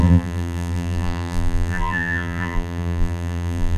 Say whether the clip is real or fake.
fake